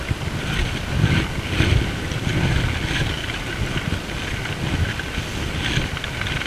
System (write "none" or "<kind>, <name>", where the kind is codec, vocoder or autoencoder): none